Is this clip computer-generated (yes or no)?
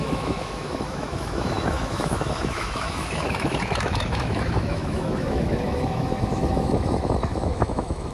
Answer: yes